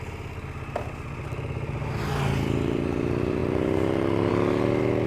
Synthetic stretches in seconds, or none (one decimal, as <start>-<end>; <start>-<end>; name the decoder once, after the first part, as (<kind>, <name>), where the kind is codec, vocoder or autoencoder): none